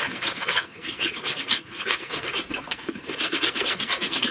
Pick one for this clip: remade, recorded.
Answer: remade